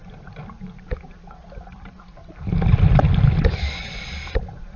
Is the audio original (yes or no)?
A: yes